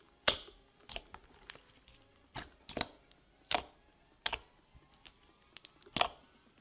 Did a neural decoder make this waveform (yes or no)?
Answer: no